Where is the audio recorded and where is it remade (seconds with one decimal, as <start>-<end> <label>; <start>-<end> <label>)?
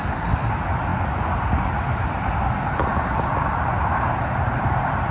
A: 0.0-5.1 recorded